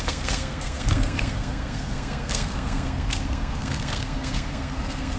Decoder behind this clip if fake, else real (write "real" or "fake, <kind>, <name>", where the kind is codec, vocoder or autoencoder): fake, codec, SNAC